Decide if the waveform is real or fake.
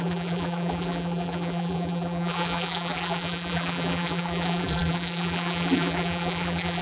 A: fake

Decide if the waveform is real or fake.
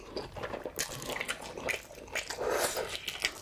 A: real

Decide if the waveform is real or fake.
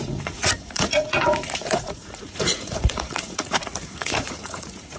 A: fake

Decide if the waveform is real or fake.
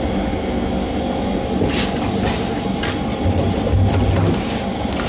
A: real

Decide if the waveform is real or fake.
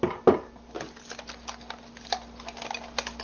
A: real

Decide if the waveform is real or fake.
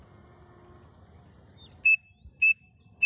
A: real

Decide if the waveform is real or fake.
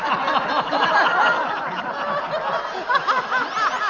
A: real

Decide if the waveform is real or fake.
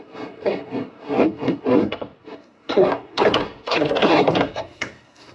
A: fake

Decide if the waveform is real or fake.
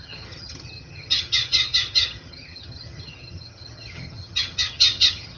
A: fake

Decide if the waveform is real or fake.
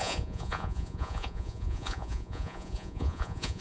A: fake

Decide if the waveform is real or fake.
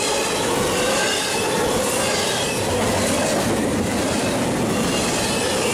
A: real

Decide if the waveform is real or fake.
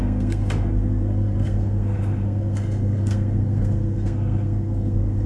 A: fake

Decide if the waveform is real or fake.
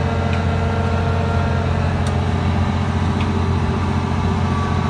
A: real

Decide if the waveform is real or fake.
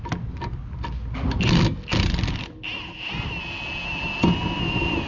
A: real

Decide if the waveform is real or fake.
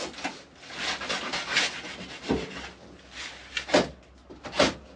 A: real